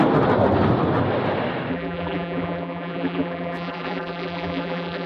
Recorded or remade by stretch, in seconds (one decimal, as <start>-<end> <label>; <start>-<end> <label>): 0.0-1.7 recorded; 1.7-5.1 remade

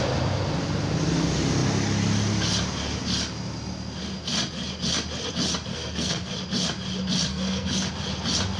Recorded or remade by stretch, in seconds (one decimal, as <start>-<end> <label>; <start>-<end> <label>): 0.0-5.7 recorded; 5.7-6.3 remade; 6.3-7.3 recorded; 7.3-7.9 remade; 7.9-8.6 recorded

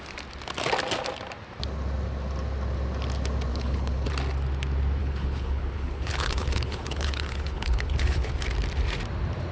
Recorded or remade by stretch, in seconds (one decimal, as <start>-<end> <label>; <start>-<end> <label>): 0.0-3.5 recorded; 3.5-4.1 remade; 4.1-5.0 recorded; 5.0-8.3 remade; 8.3-9.5 recorded

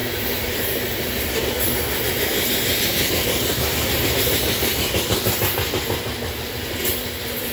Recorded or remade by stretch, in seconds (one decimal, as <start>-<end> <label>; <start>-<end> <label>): 0.0-7.5 recorded

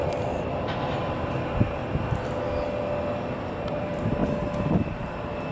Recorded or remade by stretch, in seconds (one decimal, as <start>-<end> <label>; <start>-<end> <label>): 0.0-1.8 remade; 1.8-3.5 recorded; 3.5-4.2 remade; 4.2-5.5 recorded